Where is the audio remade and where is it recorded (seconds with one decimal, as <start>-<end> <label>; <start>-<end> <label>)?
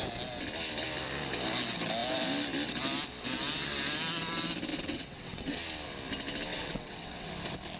0.0-4.7 recorded; 4.7-5.6 remade; 5.6-6.5 recorded; 6.5-7.3 remade; 7.3-7.8 recorded